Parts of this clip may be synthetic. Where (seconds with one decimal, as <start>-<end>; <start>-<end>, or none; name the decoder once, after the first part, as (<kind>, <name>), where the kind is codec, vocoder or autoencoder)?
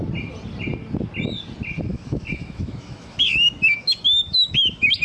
1.9-5.0 (autoencoder, DAC-VAE)